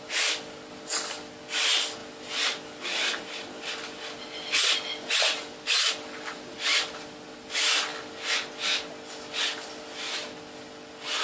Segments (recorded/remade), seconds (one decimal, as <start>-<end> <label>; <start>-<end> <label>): 0.0-7.9 remade; 7.9-10.2 recorded; 10.2-11.2 remade

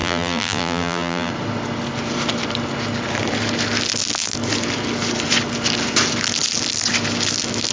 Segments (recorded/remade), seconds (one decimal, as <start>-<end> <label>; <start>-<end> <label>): 0.0-1.3 remade; 1.3-7.7 recorded

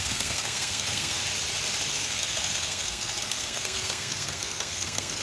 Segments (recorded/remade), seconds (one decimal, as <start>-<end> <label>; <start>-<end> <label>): 0.0-1.2 remade; 1.2-1.9 recorded; 1.9-5.2 remade

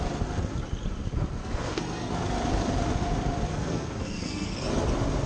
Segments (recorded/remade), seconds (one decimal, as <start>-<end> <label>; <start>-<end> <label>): 0.0-1.4 recorded; 1.4-2.1 remade; 2.1-3.5 recorded; 3.5-4.5 remade; 4.5-5.3 recorded

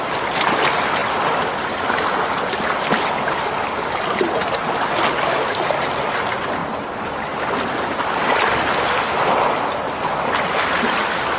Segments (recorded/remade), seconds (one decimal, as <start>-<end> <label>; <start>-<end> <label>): 0.0-11.4 recorded

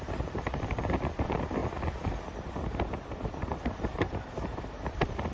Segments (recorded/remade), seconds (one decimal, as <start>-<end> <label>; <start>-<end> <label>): 0.0-1.6 remade; 1.6-3.1 recorded; 3.1-5.3 remade